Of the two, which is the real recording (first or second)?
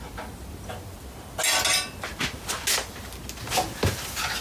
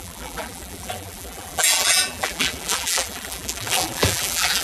first